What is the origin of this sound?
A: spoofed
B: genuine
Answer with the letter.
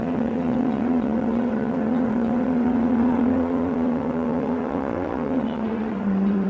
A